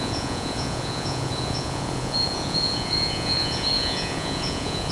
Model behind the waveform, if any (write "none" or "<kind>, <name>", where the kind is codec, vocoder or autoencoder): vocoder, Vocos